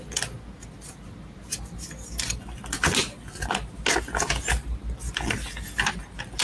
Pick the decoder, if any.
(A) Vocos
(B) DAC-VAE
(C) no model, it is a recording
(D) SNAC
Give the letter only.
C